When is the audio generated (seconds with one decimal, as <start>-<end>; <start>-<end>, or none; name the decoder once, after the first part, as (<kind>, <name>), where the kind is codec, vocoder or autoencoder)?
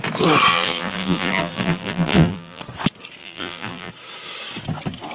0.5-2.6 (vocoder, BigVGAN v2); 3.2-3.9